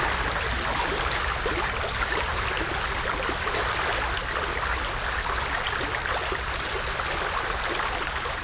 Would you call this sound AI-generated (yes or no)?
no